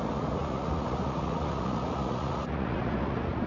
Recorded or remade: remade